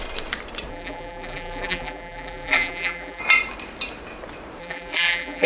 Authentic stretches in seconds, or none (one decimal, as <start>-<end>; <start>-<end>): 0.0-0.7; 3.2-4.6